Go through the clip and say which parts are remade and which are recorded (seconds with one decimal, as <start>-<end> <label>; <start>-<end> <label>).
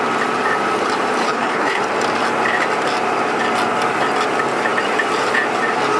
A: 0.0-1.2 recorded; 1.2-1.8 remade; 1.8-6.0 recorded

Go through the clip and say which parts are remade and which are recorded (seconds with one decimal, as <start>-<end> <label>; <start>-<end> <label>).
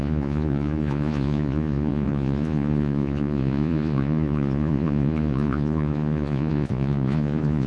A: 0.0-7.7 remade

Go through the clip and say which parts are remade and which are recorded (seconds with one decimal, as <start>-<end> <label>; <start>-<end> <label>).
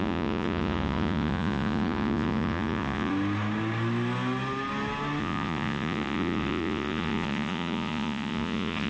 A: 0.0-3.1 remade; 3.1-5.2 recorded; 5.2-8.9 remade